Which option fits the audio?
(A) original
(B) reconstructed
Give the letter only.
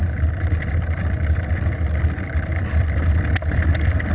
A